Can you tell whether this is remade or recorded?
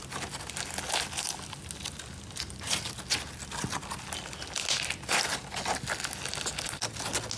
recorded